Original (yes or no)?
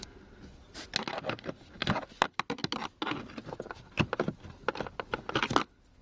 yes